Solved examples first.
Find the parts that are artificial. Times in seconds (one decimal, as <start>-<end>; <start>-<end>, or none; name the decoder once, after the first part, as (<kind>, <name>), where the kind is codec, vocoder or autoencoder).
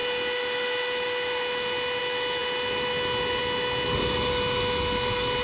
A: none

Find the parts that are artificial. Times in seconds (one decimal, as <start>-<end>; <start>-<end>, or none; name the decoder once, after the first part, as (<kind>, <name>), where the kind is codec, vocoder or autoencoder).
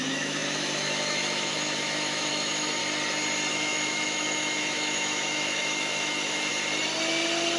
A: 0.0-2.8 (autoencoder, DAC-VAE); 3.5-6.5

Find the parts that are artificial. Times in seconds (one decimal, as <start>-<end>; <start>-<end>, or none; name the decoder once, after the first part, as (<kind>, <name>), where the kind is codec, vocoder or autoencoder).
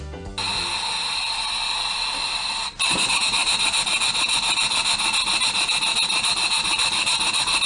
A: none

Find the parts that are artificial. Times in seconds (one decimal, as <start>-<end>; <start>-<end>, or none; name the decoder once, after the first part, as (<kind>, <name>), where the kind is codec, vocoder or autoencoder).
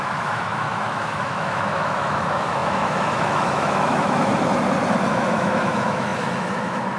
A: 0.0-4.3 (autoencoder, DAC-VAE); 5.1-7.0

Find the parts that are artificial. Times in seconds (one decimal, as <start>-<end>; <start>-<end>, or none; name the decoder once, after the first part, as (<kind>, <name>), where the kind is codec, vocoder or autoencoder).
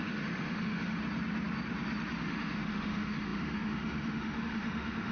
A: 0.0-1.0 (autoencoder, DAC-VAE); 2.2-5.1